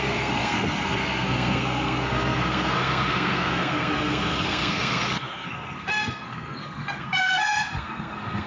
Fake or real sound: fake